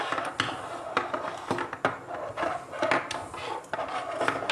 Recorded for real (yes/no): yes